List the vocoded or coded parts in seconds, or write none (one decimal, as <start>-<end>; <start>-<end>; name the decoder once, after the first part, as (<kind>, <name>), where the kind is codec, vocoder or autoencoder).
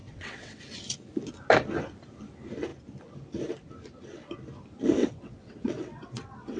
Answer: 0.0-0.6 (vocoder, WaveNeXt); 5.0-6.6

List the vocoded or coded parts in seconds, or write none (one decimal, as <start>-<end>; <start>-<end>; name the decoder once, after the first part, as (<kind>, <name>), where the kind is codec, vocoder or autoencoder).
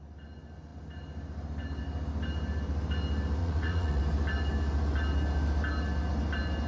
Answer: 3.4-4.0 (vocoder, Vocos)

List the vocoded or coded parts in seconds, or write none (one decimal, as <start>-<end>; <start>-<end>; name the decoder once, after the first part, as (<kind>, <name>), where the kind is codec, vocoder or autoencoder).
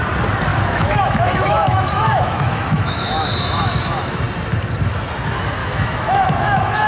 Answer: 0.5-4.2 (autoencoder, DAC-VAE); 5.6-6.9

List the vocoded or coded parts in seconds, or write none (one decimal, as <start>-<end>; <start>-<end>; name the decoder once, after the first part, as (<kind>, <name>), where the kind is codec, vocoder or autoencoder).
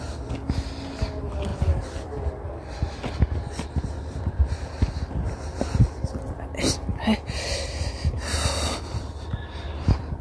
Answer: none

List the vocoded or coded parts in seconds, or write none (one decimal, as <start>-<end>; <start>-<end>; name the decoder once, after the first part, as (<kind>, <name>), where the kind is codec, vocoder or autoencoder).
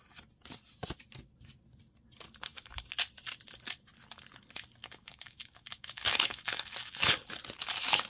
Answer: 4.8-7.1 (autoencoder, DAC-VAE)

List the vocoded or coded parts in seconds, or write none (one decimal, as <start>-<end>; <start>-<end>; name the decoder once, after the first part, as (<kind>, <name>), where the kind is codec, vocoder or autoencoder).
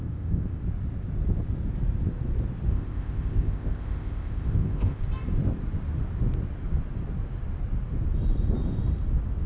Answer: 0.0-0.6 (codec, ZipCodec); 2.7-5.0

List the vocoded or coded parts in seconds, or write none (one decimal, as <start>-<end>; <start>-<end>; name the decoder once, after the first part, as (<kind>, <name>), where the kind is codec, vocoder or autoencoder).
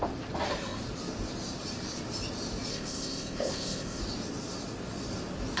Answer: 2.7-4.0 (codec, ZipCodec)